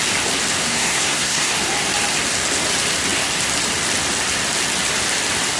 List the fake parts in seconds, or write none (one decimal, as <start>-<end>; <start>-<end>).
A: 0.6-1.5